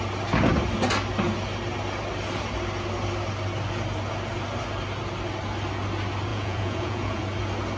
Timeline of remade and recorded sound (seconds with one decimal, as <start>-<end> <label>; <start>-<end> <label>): 0.0-6.3 recorded; 6.3-7.2 remade; 7.2-7.8 recorded